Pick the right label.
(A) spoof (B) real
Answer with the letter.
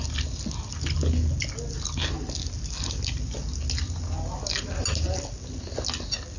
B